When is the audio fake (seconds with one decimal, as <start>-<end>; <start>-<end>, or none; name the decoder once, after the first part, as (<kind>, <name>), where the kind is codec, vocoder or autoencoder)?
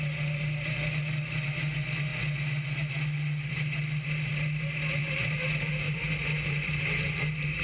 none